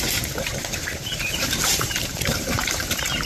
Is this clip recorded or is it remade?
remade